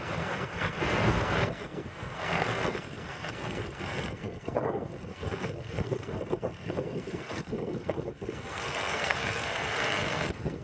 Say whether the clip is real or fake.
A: fake